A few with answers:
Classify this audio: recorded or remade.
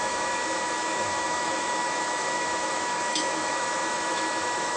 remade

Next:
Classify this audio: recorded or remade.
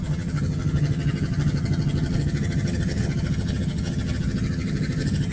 remade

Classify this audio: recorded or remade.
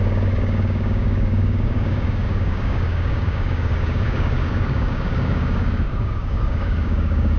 remade